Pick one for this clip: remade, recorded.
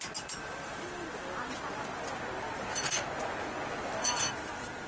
recorded